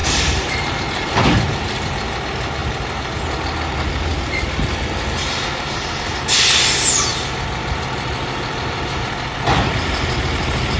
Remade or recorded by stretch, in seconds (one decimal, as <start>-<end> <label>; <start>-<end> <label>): 0.0-2.2 remade; 2.2-2.6 recorded; 2.6-3.2 remade; 3.2-4.1 recorded; 4.1-4.7 remade; 4.7-7.1 recorded; 7.1-10.8 remade